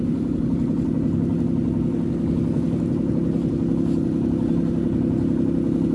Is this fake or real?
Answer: real